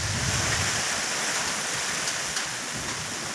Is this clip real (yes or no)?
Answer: yes